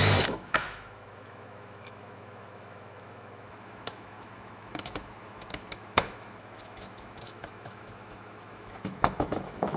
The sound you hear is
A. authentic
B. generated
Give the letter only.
B